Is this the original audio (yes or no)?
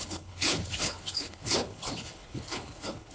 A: no